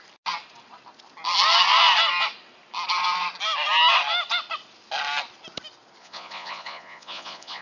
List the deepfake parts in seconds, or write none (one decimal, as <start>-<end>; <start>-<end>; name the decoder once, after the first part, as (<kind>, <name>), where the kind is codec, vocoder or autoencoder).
6.0-7.6 (vocoder, Vocos)